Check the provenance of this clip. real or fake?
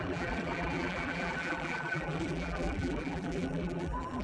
fake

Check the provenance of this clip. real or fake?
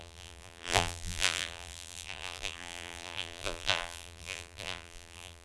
fake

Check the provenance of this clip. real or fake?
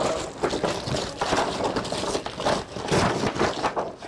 real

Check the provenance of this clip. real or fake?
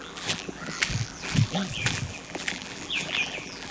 fake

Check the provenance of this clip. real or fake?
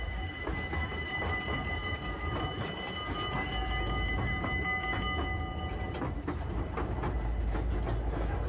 real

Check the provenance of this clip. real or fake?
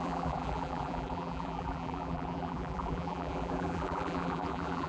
fake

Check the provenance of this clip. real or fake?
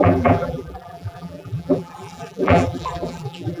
fake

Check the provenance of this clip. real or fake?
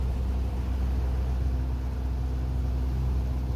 real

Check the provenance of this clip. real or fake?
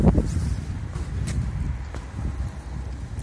real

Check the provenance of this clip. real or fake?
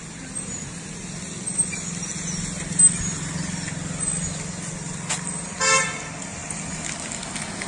real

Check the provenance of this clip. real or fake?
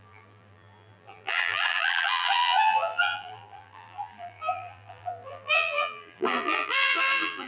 fake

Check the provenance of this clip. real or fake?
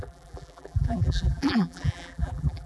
fake